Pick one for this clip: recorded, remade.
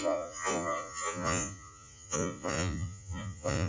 remade